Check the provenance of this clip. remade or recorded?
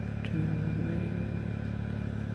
recorded